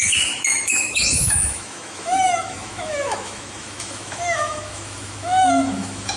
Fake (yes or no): yes